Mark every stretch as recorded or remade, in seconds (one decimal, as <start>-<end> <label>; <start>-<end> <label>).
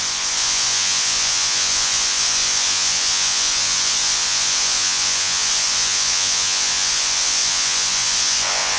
0.0-8.8 remade